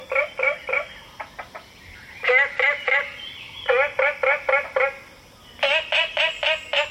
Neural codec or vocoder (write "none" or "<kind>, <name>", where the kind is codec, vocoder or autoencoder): none